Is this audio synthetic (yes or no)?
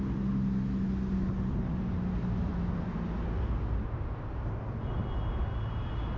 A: no